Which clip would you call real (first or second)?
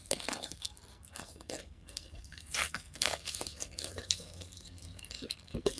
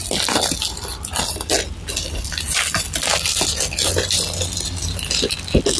second